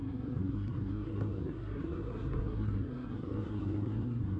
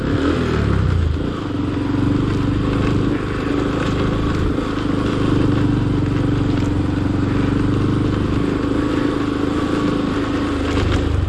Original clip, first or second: second